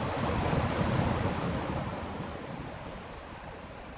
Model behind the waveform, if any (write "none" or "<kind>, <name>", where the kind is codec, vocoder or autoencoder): none